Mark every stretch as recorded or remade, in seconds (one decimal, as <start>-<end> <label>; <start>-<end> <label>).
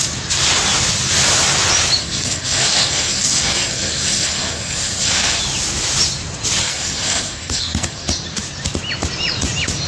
0.0-2.0 recorded; 2.0-5.4 remade; 5.4-6.6 recorded; 6.6-8.1 remade; 8.1-9.9 recorded